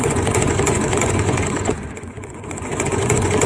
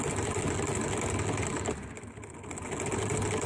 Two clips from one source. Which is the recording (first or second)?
second